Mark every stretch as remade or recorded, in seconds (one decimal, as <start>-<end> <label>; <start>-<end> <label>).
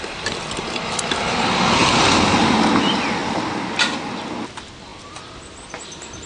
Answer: 0.0-6.3 recorded